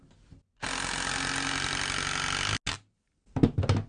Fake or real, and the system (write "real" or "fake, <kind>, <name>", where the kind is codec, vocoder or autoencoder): real